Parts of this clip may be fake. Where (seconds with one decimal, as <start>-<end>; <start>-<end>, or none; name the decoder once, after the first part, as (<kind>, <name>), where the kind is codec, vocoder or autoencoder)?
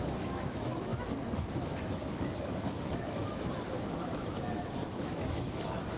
0.0-0.9 (autoencoder, DAC-VAE); 1.5-6.0